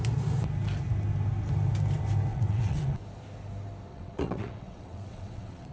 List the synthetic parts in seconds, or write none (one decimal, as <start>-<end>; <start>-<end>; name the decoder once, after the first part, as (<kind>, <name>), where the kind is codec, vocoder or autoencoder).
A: 2.3-3.0 (vocoder, WaveNeXt); 3.9-5.7